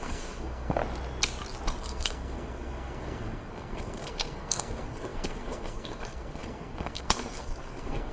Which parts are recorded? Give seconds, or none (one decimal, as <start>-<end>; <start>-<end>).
0.8-1.8